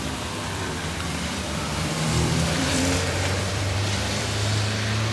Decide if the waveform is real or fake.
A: fake